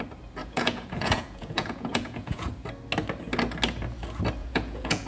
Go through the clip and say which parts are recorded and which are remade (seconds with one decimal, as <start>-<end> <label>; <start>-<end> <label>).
0.0-0.4 recorded; 0.4-2.5 remade; 2.5-4.4 recorded; 4.4-5.1 remade